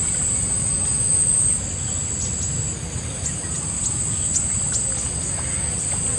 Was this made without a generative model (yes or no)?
yes